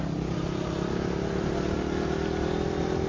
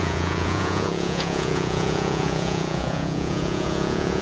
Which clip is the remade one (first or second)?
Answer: second